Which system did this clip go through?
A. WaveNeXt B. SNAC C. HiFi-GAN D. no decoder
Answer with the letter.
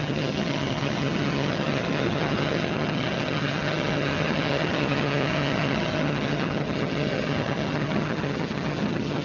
C